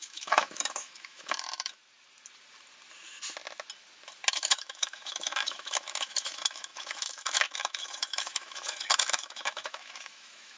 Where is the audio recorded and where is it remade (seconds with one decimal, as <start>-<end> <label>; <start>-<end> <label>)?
0.0-1.8 remade; 1.8-4.3 recorded; 4.3-10.6 remade